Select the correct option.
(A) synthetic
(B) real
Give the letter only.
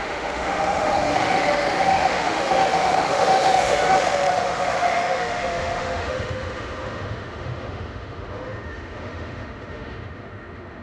A